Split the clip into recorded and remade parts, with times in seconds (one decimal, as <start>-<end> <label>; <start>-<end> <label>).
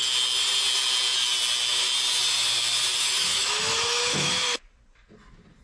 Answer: 0.0-3.0 recorded; 3.0-4.6 remade; 4.6-5.6 recorded